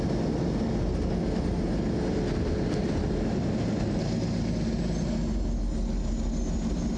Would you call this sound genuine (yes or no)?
yes